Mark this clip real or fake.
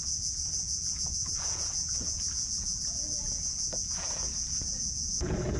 fake